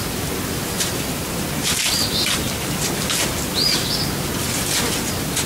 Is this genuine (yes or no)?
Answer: yes